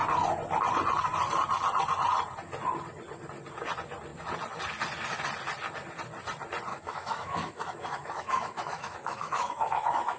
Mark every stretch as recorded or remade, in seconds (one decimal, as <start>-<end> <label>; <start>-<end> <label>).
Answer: 0.0-6.7 recorded; 6.7-10.2 remade

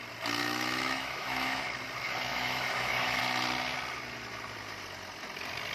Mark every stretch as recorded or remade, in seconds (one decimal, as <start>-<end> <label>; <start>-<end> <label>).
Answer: 0.0-0.4 recorded; 0.4-1.6 remade; 1.6-2.3 recorded; 2.3-3.2 remade; 3.2-5.7 recorded

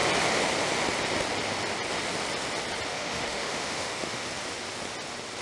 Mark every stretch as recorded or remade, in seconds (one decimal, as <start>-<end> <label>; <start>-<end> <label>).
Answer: 0.0-2.9 recorded; 2.9-4.3 remade; 4.3-5.4 recorded

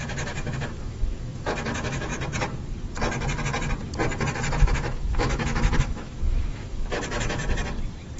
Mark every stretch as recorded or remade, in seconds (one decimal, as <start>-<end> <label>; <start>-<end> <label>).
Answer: 0.0-2.1 remade; 2.1-4.6 recorded; 4.6-7.4 remade; 7.4-8.2 recorded

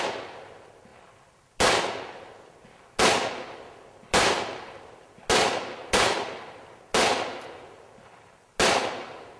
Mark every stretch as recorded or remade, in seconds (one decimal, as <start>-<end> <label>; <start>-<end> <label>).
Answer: 0.0-9.4 recorded